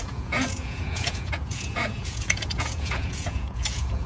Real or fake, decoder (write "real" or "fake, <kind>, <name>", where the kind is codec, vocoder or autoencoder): fake, vocoder, Vocos